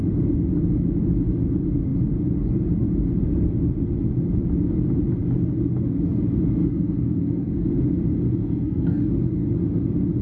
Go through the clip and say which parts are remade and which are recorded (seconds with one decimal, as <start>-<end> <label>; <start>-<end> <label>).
0.0-6.6 recorded; 6.6-7.7 remade; 7.7-8.4 recorded; 8.4-9.1 remade; 9.1-10.2 recorded